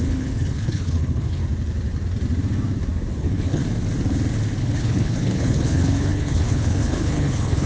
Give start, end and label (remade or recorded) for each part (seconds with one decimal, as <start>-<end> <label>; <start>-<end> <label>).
0.0-1.4 remade; 1.4-3.1 recorded; 3.1-3.6 remade; 3.6-4.6 recorded; 4.6-7.7 remade